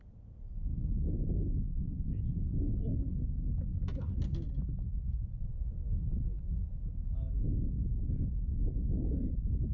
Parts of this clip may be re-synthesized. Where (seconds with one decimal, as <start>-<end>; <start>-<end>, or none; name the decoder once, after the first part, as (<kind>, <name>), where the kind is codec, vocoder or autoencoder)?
none